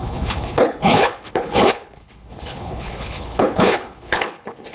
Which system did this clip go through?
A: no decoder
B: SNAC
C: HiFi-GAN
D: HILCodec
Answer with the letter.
D